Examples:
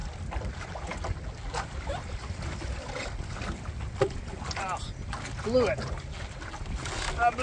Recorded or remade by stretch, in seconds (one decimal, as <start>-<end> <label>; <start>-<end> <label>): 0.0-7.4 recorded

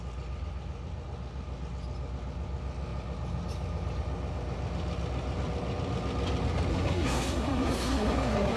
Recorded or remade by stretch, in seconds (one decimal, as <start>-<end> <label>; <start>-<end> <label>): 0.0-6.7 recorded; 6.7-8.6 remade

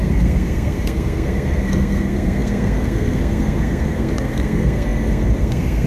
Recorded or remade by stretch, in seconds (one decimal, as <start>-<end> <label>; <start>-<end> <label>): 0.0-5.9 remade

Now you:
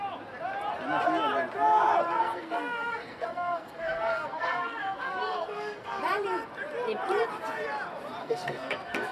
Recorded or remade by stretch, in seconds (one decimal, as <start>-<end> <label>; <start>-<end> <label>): 0.0-2.2 recorded; 2.2-6.0 remade; 6.0-8.2 recorded; 8.2-9.1 remade

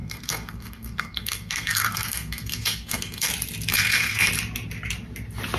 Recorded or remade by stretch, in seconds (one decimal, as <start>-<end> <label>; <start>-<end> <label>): 0.0-3.3 remade; 3.3-3.7 recorded; 3.7-4.3 remade; 4.3-5.6 recorded